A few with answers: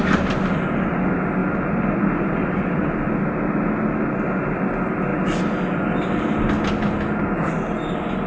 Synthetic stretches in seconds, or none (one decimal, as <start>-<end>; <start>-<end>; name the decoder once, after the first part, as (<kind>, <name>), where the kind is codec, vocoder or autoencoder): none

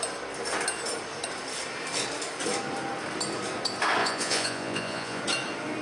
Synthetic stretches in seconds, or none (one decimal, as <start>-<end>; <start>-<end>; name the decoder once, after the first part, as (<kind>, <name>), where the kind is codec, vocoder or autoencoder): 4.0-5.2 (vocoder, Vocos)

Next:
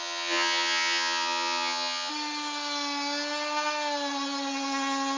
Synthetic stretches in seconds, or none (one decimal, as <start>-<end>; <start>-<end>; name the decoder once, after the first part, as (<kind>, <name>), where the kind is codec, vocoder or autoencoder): 0.0-2.1 (vocoder, HiFi-GAN)